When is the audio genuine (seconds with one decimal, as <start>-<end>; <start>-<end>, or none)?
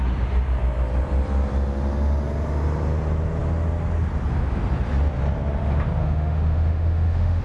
0.0-6.0